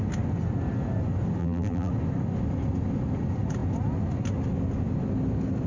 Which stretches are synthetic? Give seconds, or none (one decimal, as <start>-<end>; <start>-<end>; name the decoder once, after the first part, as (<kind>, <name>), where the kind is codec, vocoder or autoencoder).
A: 1.4-1.9 (vocoder, BigVGAN v2)